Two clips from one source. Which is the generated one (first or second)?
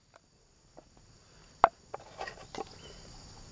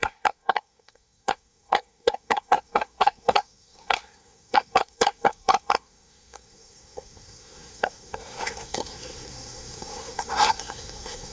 second